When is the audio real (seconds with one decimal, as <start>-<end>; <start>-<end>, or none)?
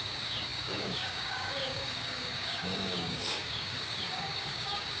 none